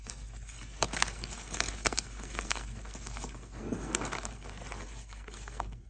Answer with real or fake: fake